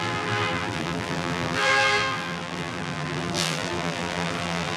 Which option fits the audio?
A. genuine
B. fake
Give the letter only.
B